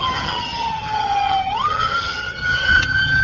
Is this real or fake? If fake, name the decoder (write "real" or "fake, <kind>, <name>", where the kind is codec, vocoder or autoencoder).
fake, vocoder, HiFi-GAN